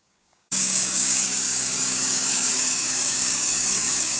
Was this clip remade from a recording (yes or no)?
yes